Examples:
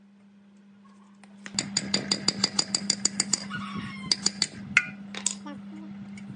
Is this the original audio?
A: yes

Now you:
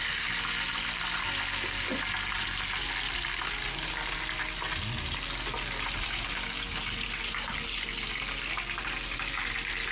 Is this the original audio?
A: yes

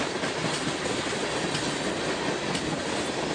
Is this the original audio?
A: yes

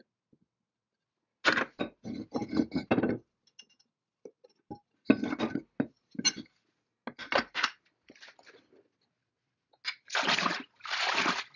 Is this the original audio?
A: yes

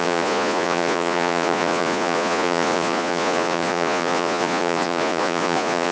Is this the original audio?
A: no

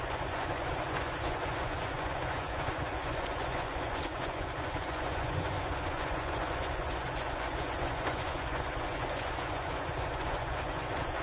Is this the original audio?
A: no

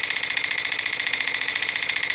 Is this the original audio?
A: no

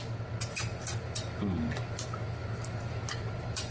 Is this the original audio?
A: yes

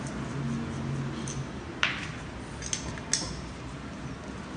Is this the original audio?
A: yes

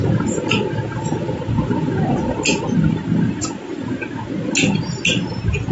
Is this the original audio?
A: yes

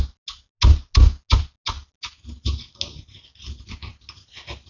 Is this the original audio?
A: yes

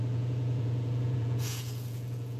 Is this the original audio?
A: no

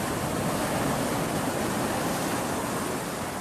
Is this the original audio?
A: yes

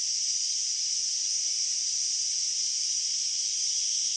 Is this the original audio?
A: yes